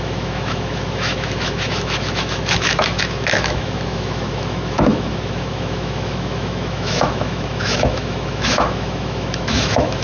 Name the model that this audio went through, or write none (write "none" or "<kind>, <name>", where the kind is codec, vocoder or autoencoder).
autoencoder, DAC-VAE